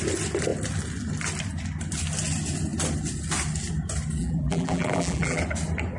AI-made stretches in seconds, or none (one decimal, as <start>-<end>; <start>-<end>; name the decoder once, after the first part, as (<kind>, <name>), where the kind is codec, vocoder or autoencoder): 4.2-5.4 (vocoder, BigVGAN v2)

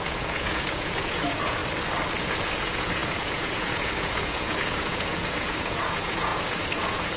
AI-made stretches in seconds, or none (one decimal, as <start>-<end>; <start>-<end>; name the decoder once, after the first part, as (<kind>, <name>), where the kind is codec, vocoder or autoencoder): 0.0-1.6 (vocoder, Vocos); 2.2-7.2

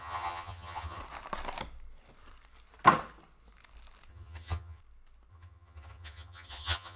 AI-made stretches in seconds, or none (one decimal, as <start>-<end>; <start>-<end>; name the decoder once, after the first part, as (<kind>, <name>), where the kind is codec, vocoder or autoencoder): 0.0-1.0 (vocoder, HiFi-GAN); 4.1-4.8; 5.3-7.0

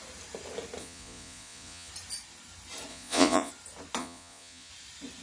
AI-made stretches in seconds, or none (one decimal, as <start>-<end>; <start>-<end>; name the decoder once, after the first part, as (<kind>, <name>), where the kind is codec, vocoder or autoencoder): 0.8-1.9 (vocoder, Vocos); 2.9-3.5; 4.0-4.7